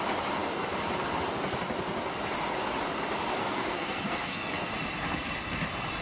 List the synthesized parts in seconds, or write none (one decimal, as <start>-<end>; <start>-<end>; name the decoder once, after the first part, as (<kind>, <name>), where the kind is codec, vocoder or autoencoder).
3.4-4.7 (codec, SNAC)